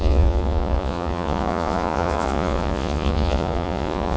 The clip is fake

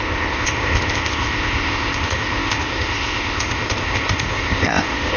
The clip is fake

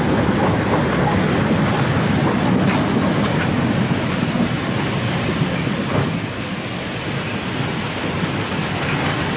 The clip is real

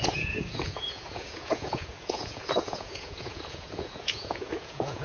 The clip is fake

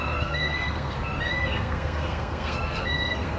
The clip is fake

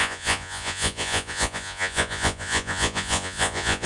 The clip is fake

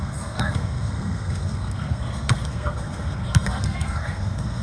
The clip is fake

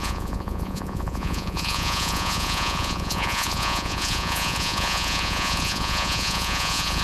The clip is fake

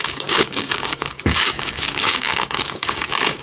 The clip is fake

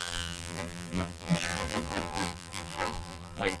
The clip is fake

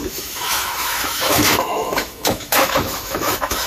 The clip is fake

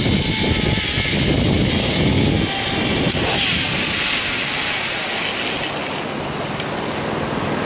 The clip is real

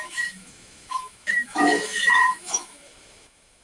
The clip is fake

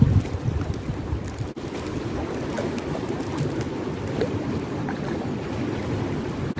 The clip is real